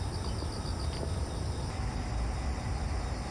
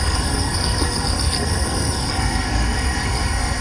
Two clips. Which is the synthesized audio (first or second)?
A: second